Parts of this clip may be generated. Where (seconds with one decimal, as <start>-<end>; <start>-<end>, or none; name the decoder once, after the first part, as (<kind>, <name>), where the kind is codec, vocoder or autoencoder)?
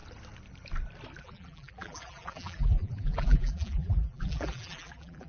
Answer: 1.2-5.3 (vocoder, BigVGAN v2)